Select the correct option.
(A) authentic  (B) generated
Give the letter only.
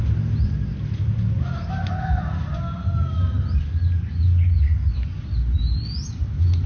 A